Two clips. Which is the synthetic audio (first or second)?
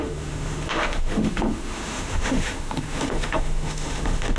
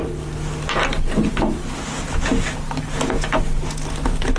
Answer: first